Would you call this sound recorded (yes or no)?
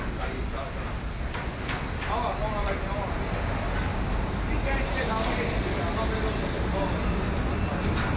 yes